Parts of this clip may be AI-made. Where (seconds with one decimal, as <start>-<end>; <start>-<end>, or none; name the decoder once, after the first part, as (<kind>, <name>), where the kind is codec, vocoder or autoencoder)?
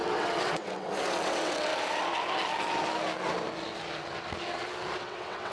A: 0.0-1.7 (vocoder, WaveNeXt); 5.0-5.5